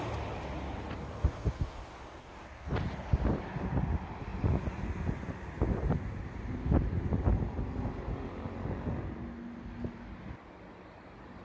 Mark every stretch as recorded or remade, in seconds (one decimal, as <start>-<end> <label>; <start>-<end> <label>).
0.0-11.4 recorded